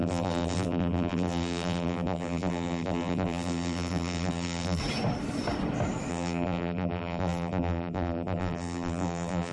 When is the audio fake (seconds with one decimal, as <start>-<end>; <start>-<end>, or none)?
0.0-4.8; 6.1-9.5